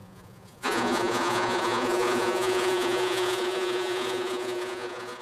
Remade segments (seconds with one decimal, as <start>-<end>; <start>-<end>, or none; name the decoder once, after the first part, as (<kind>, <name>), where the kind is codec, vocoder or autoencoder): 0.0-5.2 (vocoder, Vocos)